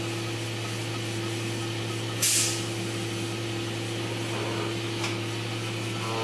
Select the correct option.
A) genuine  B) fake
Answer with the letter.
A